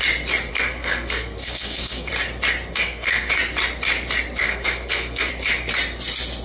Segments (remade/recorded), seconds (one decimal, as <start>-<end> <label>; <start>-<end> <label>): 0.0-0.5 recorded; 0.5-2.1 remade; 2.1-2.7 recorded; 2.7-3.3 remade; 3.3-4.4 recorded; 4.4-5.3 remade; 5.3-6.4 recorded